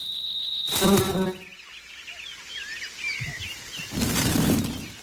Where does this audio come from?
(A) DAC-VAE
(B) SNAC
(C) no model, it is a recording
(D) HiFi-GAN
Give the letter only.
C